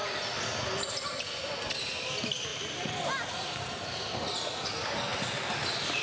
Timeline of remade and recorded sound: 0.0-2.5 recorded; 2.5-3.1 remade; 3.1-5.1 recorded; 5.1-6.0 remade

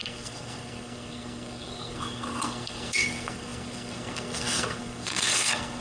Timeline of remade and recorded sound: 0.0-5.8 remade

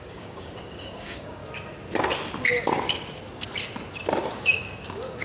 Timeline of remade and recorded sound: 0.0-1.4 remade; 1.4-4.3 recorded; 4.3-5.2 remade

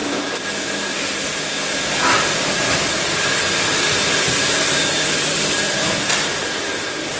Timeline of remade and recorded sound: 0.0-7.2 recorded